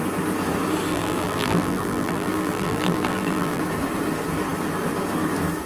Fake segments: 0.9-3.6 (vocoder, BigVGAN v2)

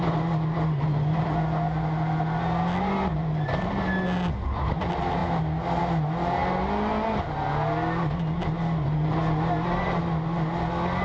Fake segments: none

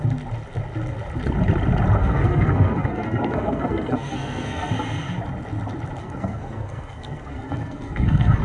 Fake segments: 2.0-4.7 (codec, SNAC); 6.0-8.4

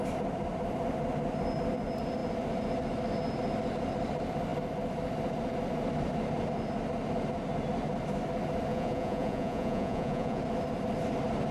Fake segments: 8.7-10.4 (vocoder, Vocos)